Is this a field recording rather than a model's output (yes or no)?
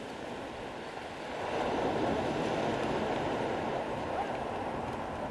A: yes